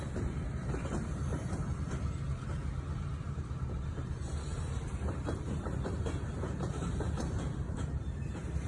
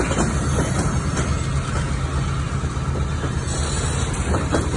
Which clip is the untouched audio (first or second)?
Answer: second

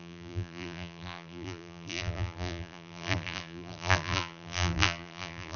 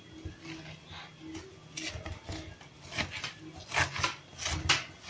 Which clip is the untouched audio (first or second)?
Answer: second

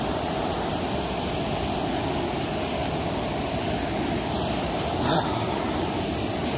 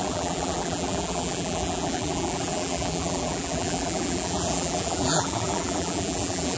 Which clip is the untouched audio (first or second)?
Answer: first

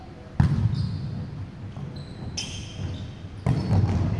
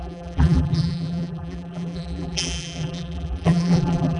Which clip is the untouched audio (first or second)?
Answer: first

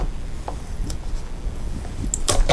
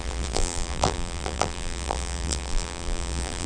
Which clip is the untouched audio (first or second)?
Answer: first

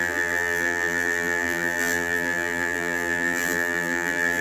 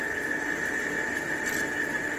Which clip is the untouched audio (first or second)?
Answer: second